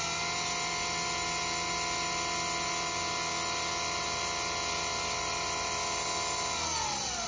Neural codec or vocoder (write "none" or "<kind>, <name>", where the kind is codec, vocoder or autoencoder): none